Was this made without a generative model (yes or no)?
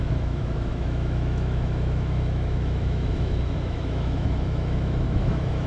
no